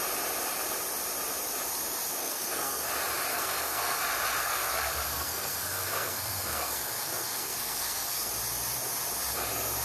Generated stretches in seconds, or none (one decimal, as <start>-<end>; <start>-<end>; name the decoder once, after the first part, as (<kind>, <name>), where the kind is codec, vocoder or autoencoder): 2.2-2.9 (codec, SNAC); 3.3-4.0; 4.4-8.3